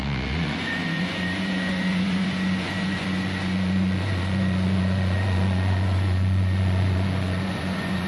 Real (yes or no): no